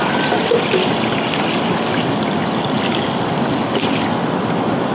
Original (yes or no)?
yes